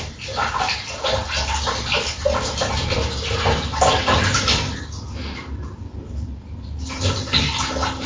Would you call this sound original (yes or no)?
yes